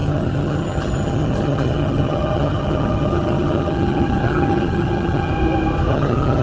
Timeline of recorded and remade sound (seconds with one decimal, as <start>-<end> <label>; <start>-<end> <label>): 0.0-5.3 remade; 5.3-5.9 recorded; 5.9-6.4 remade